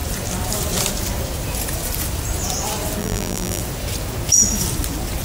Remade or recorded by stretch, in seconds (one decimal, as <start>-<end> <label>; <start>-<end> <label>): 0.0-3.0 recorded; 3.0-3.6 remade; 3.6-5.2 recorded